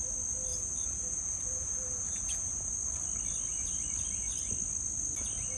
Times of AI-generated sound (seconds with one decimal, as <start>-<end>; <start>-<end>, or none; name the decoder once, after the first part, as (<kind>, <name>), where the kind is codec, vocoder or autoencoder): 0.5-2.7 (vocoder, BigVGAN v2)